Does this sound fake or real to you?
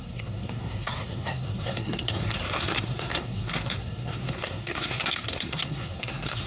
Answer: fake